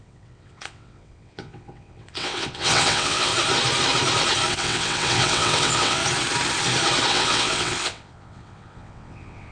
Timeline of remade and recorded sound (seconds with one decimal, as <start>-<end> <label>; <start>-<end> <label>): 0.0-3.3 remade; 3.3-4.5 recorded; 4.5-6.0 remade; 6.0-7.1 recorded; 7.1-9.5 remade